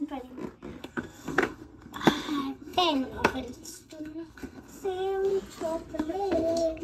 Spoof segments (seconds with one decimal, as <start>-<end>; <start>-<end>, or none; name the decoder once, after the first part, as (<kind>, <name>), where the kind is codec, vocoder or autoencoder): 0.8-5.3 (codec, SNAC); 5.9-6.8